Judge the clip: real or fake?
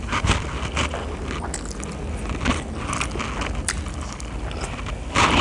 real